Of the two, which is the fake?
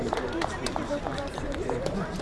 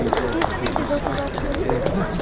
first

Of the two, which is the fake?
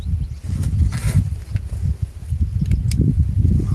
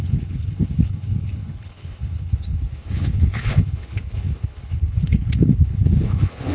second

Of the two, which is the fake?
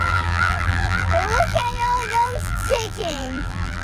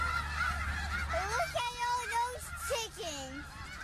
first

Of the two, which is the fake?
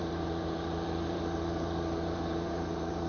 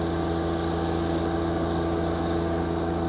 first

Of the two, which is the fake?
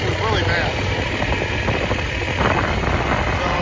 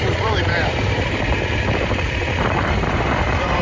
second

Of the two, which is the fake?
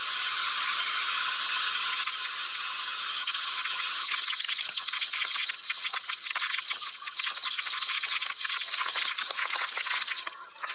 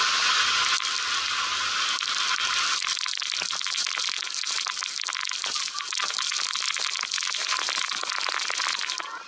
first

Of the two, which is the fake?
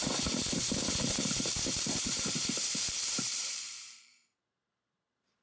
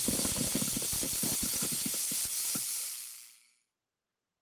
first